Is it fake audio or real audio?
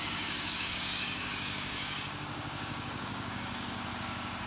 fake